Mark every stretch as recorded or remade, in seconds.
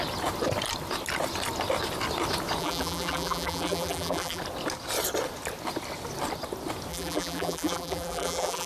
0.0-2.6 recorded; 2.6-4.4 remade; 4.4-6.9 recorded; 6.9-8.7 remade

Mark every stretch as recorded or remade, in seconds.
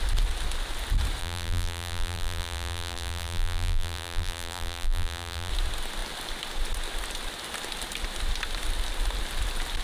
0.0-1.2 recorded; 1.2-5.5 remade; 5.5-9.8 recorded